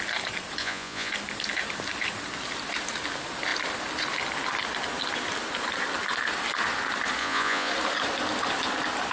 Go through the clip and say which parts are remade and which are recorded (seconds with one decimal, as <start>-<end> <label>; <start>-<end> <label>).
0.0-0.6 recorded; 0.6-1.1 remade; 1.1-7.2 recorded; 7.2-7.7 remade; 7.7-9.1 recorded